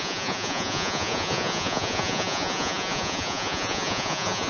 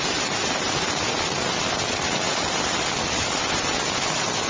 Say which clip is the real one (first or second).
second